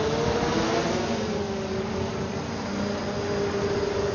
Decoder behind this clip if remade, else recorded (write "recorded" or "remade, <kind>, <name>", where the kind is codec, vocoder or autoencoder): remade, vocoder, BigVGAN v2